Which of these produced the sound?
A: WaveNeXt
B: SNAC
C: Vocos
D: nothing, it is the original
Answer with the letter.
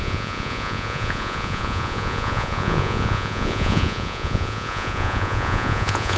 C